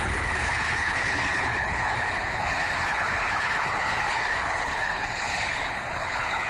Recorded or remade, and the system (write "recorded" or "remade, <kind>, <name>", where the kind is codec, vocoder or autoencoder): remade, codec, HILCodec